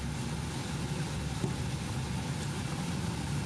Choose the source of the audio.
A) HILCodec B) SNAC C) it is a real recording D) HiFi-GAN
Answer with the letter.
C